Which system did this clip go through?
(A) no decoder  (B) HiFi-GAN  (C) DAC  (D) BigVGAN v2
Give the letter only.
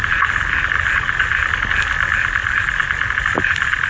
A